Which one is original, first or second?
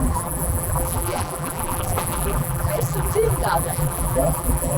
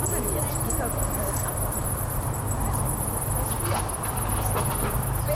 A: second